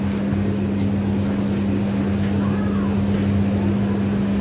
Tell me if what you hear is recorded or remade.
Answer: recorded